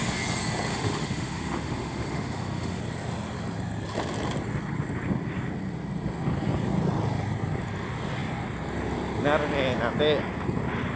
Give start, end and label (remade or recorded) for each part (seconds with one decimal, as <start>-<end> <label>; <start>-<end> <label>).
0.0-0.7 recorded; 0.7-2.8 remade; 2.8-11.0 recorded